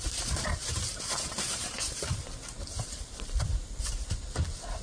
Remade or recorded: recorded